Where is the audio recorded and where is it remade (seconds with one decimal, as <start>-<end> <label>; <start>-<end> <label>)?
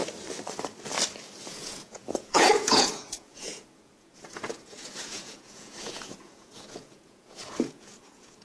0.0-1.5 recorded; 1.5-8.4 remade